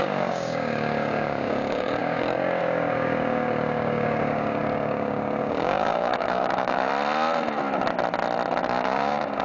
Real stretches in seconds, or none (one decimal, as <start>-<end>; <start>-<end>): 6.9-8.6